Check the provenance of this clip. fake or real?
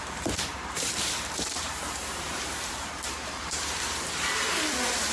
fake